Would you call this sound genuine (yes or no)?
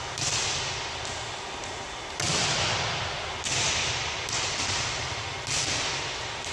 yes